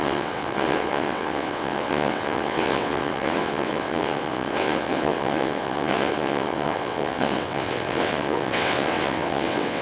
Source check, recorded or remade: remade